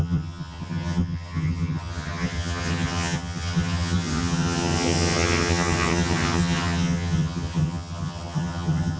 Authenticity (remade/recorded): remade